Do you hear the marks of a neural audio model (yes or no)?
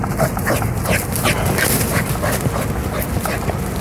no